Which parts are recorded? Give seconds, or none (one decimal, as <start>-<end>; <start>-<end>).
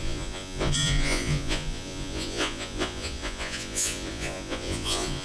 none